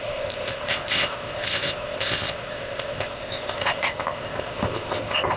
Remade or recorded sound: remade